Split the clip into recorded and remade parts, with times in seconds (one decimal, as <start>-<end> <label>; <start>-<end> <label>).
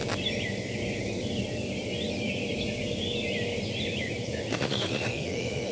0.0-4.5 recorded; 4.5-5.7 remade